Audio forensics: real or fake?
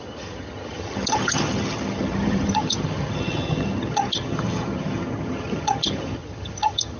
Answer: fake